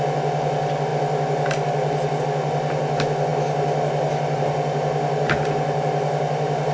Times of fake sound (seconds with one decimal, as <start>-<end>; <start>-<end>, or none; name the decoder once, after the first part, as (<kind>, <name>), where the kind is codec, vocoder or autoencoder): none